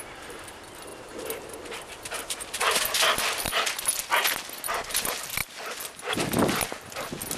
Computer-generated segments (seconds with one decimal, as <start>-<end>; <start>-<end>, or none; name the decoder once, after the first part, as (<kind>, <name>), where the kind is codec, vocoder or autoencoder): none